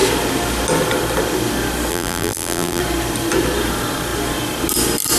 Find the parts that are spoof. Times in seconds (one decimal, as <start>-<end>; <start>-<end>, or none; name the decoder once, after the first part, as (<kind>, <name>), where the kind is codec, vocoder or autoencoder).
1.9-2.8 (vocoder, BigVGAN v2)

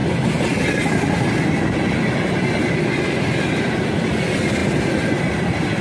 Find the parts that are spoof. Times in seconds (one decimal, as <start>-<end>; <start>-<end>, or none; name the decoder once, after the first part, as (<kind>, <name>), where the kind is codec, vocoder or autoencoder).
1.6-5.8 (vocoder, BigVGAN v2)

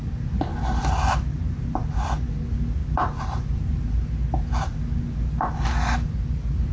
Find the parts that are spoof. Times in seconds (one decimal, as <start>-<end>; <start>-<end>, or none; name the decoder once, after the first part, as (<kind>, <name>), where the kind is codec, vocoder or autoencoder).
0.5-1.9 (vocoder, BigVGAN v2); 2.8-3.9

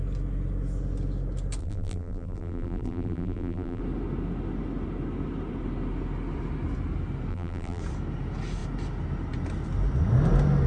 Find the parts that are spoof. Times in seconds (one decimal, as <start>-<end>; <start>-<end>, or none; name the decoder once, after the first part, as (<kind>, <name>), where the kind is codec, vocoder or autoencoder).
1.6-3.8 (vocoder, BigVGAN v2); 7.3-7.8

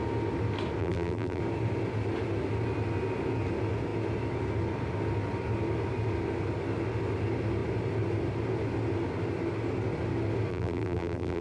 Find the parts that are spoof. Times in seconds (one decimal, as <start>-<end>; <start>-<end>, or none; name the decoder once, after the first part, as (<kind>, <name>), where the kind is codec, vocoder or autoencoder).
0.8-1.4 (vocoder, BigVGAN v2); 10.5-11.4

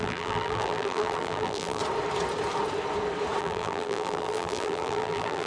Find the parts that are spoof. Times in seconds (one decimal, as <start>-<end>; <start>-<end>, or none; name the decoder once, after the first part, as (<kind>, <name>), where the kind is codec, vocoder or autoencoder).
0.0-1.8 (vocoder, BigVGAN v2); 3.4-5.5

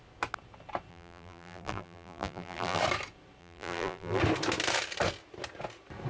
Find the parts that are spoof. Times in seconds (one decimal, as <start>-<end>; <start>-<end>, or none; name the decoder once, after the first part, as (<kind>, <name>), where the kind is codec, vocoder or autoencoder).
0.9-2.8 (vocoder, BigVGAN v2); 3.4-4.2

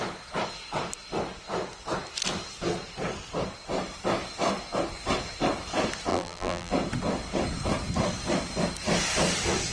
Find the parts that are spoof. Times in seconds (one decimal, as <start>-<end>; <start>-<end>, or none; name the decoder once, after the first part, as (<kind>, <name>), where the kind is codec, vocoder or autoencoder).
6.1-6.7 (vocoder, BigVGAN v2)